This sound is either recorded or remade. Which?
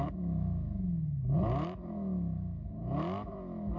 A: remade